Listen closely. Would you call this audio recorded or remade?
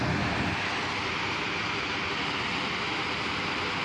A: recorded